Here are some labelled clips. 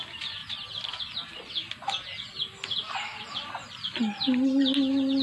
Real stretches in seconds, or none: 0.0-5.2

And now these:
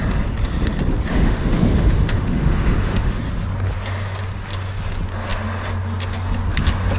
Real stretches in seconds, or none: 0.0-1.1; 3.2-7.0

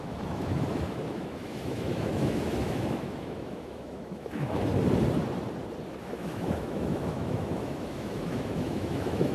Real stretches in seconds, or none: 4.7-5.9

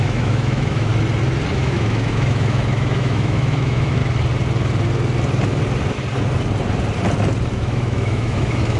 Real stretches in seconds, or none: 0.9-1.5; 4.0-7.5

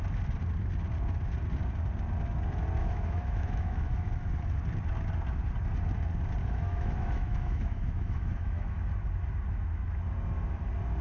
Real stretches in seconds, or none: 0.0-2.8; 4.1-6.4; 8.8-11.0